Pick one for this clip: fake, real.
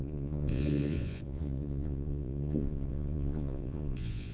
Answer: fake